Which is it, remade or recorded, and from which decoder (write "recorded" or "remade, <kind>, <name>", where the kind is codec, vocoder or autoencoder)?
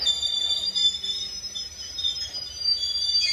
recorded